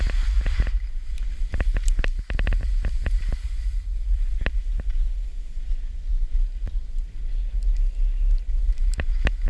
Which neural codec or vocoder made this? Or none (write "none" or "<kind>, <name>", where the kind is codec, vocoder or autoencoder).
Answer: none